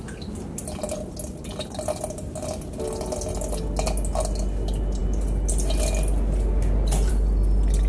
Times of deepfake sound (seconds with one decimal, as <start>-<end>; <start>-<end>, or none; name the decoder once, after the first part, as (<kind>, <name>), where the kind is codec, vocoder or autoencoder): none

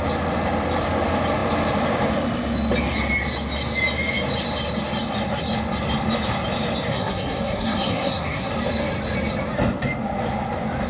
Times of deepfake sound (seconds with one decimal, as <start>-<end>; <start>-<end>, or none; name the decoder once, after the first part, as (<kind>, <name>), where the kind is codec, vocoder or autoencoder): 6.9-8.5 (codec, SNAC)

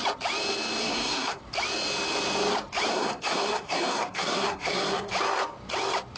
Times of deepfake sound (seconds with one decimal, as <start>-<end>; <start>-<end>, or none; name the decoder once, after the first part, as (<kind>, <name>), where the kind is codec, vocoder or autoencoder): 0.8-1.4 (codec, SNAC); 2.9-5.1

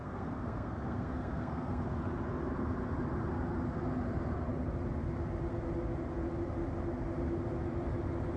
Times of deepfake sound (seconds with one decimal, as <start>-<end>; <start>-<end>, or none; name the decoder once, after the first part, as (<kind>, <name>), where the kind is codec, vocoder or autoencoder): 0.0-2.0 (codec, SNAC)